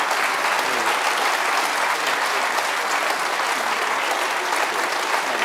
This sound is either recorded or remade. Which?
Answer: recorded